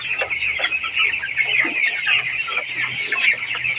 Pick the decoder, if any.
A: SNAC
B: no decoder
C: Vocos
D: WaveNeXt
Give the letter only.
B